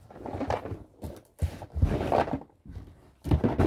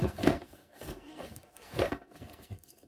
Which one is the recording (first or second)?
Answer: first